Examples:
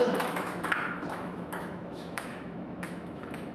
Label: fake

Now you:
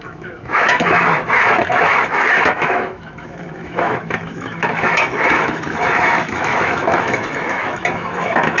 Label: fake